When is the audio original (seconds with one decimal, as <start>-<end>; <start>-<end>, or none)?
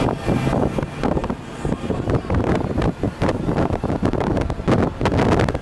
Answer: 0.0-1.2; 4.6-5.6